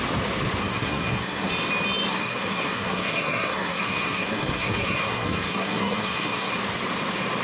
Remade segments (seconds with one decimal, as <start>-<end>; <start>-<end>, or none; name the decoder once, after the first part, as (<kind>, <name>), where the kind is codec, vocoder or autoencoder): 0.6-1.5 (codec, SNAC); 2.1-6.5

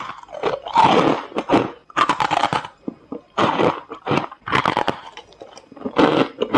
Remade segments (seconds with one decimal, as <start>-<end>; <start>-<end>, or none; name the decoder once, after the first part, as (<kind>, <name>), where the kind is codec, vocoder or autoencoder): 1.5-5.2 (vocoder, BigVGAN v2)

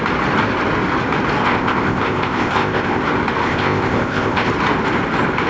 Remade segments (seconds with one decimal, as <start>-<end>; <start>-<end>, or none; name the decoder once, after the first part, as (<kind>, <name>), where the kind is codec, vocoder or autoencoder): 1.4-3.0 (codec, ZipCodec); 3.4-4.5

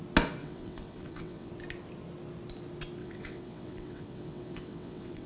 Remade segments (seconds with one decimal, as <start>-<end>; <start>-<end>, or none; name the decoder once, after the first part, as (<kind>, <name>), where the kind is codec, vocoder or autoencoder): 0.4-1.5 (vocoder, WaveNeXt); 3.0-5.3

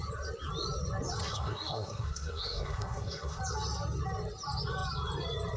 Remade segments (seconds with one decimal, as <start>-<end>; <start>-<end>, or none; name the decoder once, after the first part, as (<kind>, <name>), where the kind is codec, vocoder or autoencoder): 1.2-3.4 (codec, SNAC)

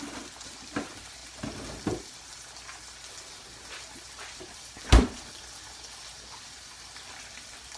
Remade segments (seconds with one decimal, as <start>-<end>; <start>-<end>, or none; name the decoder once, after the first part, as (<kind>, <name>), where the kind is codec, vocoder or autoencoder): none